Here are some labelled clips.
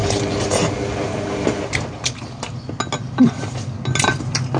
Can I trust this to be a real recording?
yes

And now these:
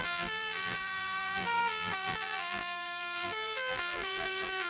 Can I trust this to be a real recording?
no